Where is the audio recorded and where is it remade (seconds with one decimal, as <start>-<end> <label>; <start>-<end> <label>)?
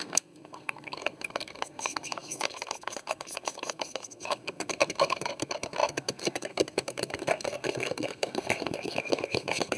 0.0-9.8 remade